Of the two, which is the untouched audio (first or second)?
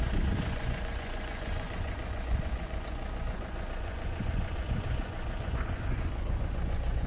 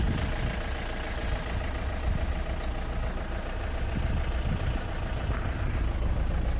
second